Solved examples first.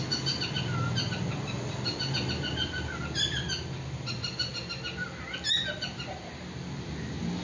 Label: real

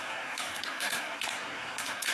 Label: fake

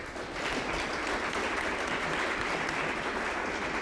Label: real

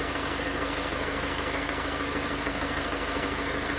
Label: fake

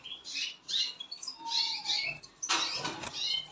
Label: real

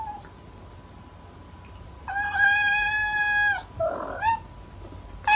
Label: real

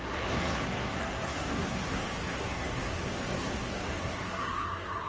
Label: fake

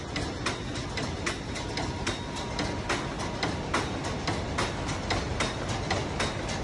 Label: real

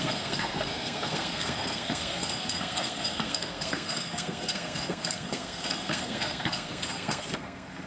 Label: fake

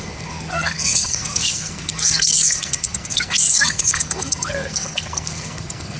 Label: fake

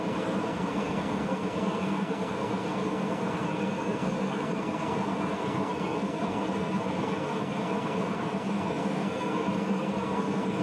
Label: fake